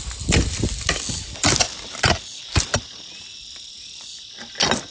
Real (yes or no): yes